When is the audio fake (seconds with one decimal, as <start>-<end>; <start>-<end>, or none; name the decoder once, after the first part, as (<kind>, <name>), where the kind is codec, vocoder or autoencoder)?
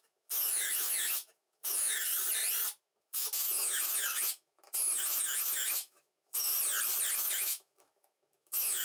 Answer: 0.0-2.1 (autoencoder, DAC-VAE); 2.8-6.5; 7.1-8.8